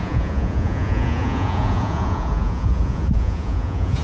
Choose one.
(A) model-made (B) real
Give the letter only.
A